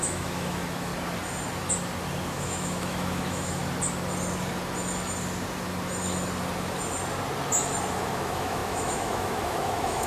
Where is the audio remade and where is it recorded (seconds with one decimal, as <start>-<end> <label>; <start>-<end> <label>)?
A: 0.0-0.9 remade; 0.9-2.2 recorded; 2.2-3.6 remade; 3.6-7.9 recorded; 7.9-10.1 remade